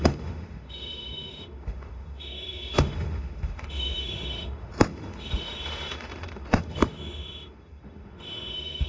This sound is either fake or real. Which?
fake